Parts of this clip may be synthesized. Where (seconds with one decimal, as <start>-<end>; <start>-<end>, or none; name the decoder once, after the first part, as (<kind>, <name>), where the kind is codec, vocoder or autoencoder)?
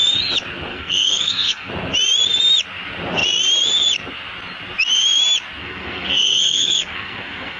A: 0.7-1.7 (codec, SNAC); 5.6-7.6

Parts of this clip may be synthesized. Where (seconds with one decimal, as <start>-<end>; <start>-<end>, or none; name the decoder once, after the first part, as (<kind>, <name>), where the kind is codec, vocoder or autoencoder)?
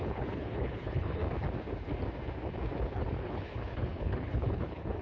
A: 0.0-1.2 (codec, HILCodec); 3.0-5.0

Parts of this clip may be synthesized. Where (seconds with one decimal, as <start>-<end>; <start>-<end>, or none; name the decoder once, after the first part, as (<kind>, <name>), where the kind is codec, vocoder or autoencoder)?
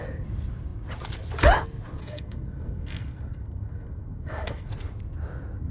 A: 2.0-4.7 (codec, SNAC)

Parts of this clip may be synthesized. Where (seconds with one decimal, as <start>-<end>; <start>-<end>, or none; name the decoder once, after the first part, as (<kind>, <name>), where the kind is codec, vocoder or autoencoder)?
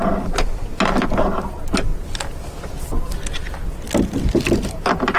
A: none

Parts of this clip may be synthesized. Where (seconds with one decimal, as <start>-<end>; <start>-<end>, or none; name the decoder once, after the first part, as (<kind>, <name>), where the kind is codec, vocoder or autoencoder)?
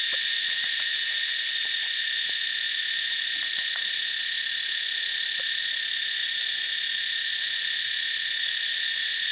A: 0.0-9.3 (vocoder, Vocos)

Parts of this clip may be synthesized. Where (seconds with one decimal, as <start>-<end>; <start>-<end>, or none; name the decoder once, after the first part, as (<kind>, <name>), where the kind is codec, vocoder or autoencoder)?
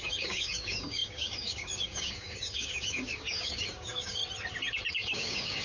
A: 0.0-4.2 (codec, DAC); 4.9-5.6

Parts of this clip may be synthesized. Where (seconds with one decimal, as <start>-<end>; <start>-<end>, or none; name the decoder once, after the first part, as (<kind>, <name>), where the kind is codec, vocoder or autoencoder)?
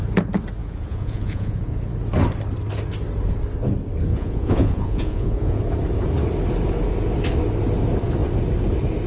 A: 0.6-1.9 (vocoder, Vocos); 4.1-5.6